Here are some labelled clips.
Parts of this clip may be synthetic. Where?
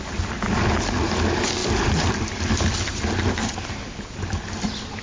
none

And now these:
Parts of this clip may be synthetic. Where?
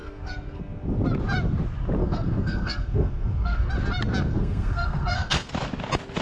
0.0-0.6 (codec, SNAC); 2.0-3.7; 4.3-5.5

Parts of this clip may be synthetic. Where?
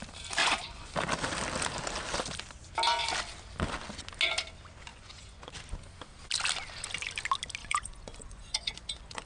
0.4-0.9 (vocoder, Vocos); 4.9-5.5; 7.6-9.3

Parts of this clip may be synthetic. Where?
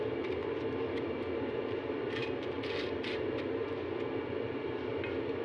2.2-3.2 (vocoder, BigVGAN v2)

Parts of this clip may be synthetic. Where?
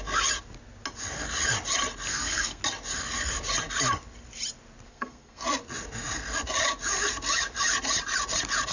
2.1-2.6 (codec, SNAC); 4.9-5.4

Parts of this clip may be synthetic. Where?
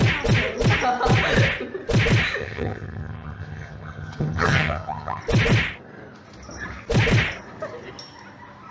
2.4-5.2 (vocoder, HiFi-GAN)